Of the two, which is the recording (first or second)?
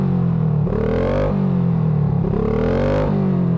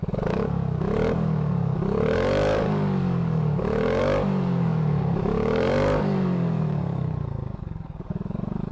first